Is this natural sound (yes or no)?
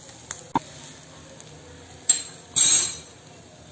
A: yes